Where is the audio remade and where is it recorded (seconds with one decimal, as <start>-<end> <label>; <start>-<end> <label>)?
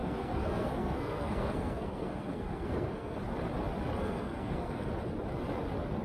0.0-3.2 remade; 3.2-4.0 recorded; 4.0-4.9 remade; 4.9-6.0 recorded